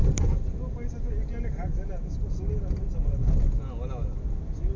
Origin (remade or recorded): recorded